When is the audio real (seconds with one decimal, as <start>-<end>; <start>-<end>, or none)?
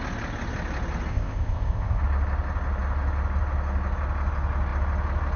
0.0-1.1; 2.0-5.4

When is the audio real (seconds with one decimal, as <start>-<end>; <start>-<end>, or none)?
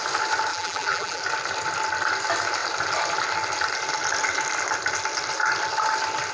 0.0-0.5; 1.2-6.3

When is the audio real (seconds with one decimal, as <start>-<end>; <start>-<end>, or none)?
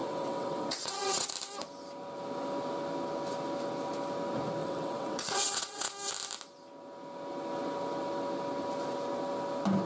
1.3-4.6; 5.9-9.9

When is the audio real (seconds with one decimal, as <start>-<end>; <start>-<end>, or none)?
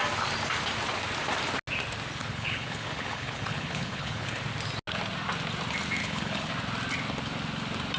0.0-2.2; 4.4-6.0; 6.5-8.0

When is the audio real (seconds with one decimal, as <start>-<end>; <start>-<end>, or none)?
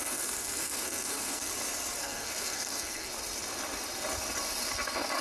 1.5-2.0; 3.1-5.2